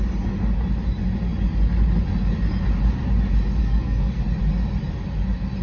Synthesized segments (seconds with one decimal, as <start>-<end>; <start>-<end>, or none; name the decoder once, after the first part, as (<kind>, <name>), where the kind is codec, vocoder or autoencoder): 3.6-4.2 (codec, SNAC)